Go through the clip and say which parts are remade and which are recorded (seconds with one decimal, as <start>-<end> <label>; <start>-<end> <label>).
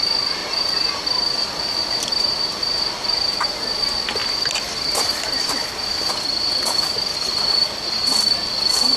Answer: 0.0-9.0 recorded